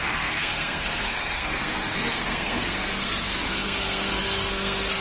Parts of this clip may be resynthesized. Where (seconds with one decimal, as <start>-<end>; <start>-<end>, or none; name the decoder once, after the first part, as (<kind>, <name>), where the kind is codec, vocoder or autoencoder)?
0.0-5.0 (codec, SNAC)